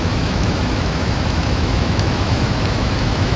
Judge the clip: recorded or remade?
remade